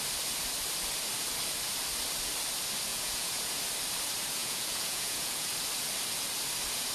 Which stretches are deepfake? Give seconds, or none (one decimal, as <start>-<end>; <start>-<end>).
2.9-3.6; 4.4-5.5